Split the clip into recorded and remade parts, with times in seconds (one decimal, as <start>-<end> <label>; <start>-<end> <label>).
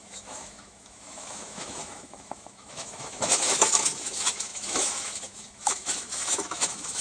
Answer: 0.0-7.0 remade